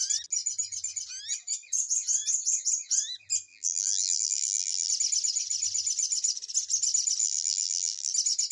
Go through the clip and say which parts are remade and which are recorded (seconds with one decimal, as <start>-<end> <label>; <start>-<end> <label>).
0.0-3.5 recorded; 3.5-4.9 remade; 4.9-7.2 recorded; 7.2-8.1 remade; 8.1-8.5 recorded